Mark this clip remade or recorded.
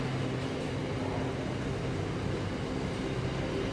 recorded